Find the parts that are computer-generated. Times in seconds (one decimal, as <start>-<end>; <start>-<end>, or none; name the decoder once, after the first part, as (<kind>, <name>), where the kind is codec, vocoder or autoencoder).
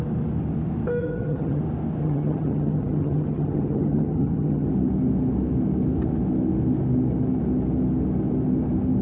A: 1.0-1.6 (vocoder, HiFi-GAN); 2.0-4.7